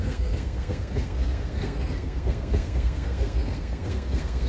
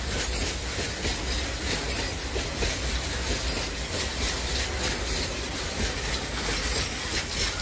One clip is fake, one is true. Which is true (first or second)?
second